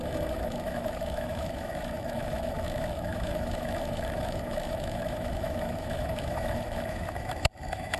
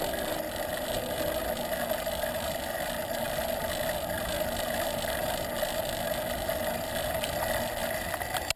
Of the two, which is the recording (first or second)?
second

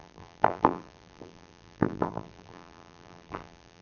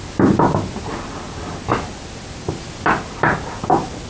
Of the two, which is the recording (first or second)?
second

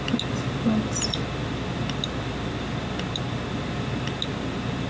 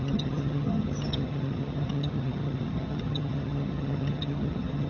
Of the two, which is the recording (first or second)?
first